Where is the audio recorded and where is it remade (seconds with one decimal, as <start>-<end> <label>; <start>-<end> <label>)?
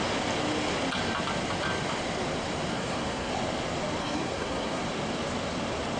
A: 0.0-2.7 recorded; 2.7-3.3 remade; 3.3-4.0 recorded; 4.0-4.8 remade; 4.8-6.0 recorded